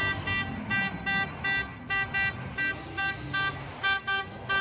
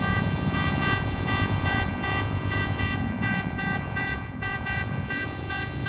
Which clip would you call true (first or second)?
first